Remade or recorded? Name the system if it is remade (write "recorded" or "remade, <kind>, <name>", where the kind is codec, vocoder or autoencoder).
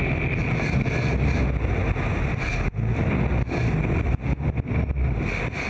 recorded